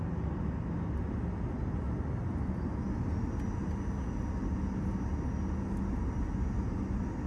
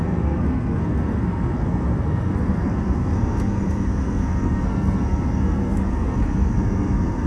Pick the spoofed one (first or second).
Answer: second